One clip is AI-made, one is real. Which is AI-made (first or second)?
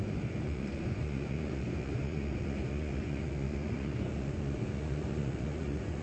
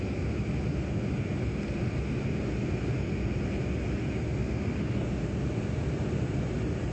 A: first